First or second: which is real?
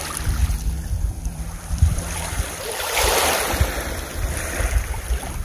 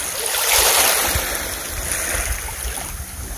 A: second